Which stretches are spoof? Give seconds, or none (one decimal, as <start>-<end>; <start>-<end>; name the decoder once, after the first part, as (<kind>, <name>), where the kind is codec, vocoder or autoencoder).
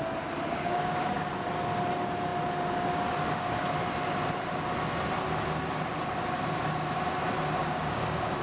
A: 0.5-1.3 (codec, DAC); 7.6-8.4